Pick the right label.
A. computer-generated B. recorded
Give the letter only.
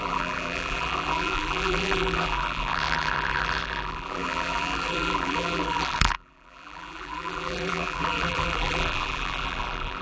A